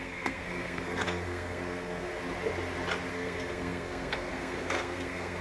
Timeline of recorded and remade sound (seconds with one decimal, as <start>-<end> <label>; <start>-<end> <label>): 0.0-2.1 remade; 2.1-3.1 recorded; 3.1-5.4 remade